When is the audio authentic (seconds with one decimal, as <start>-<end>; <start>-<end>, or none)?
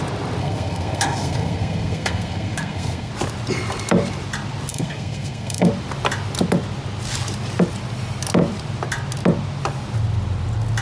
0.0-0.4; 3.1-4.7; 5.7-10.8